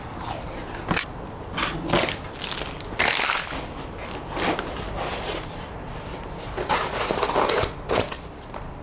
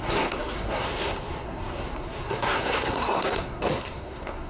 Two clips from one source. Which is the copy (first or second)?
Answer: second